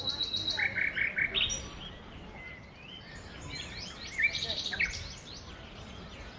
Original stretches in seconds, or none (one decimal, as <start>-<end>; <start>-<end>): 0.0-6.4